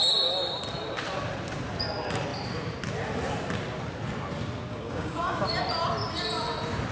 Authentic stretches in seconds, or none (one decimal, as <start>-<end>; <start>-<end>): 0.0-4.7; 5.4-6.9